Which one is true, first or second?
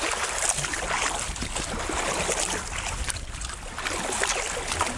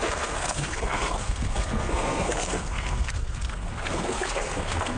first